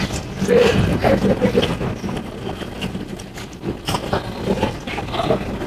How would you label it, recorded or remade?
recorded